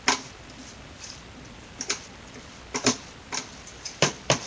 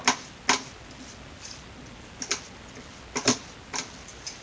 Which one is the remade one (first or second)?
first